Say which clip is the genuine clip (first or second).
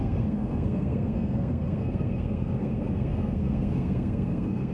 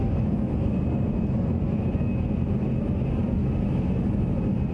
second